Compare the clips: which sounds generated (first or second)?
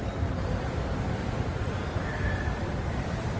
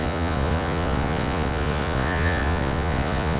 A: second